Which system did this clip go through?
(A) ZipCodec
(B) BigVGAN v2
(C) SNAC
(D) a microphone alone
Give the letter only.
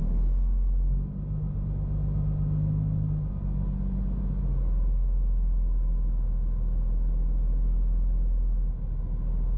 D